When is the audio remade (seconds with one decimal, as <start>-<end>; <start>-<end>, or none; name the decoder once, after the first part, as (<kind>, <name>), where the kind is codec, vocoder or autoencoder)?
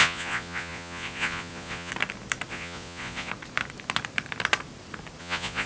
0.0-1.9 (vocoder, Vocos); 2.5-3.3; 5.2-5.7